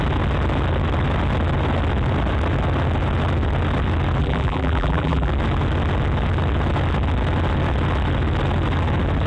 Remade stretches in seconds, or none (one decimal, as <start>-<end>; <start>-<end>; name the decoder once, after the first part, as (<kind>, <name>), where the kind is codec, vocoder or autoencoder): 4.2-5.3 (vocoder, BigVGAN v2)